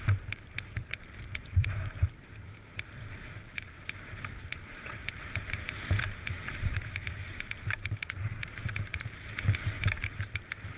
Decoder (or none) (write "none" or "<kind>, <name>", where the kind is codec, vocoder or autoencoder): vocoder, BigVGAN v2